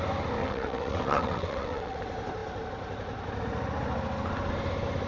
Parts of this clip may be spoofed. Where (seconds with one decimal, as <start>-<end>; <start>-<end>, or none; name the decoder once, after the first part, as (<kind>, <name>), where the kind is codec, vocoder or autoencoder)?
0.4-2.0 (vocoder, WaveNeXt)